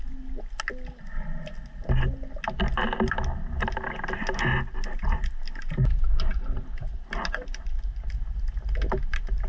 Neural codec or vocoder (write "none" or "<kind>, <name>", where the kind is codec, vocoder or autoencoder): none